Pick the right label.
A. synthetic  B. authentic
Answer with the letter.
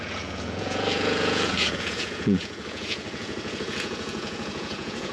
A